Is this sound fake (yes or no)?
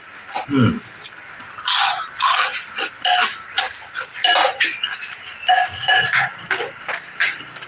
no